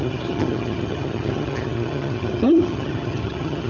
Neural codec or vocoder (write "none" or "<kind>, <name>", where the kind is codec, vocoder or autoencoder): vocoder, HiFi-GAN